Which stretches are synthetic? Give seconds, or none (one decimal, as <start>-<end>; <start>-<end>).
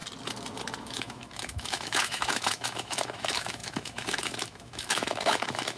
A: 0.8-5.8